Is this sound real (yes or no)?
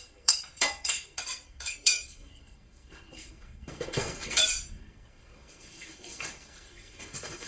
no